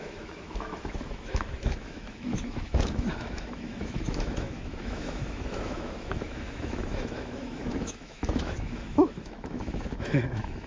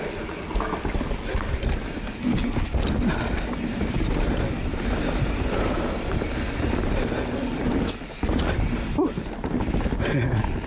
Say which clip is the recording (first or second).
second